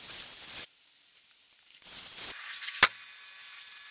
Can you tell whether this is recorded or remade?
recorded